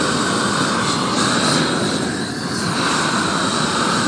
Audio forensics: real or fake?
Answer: real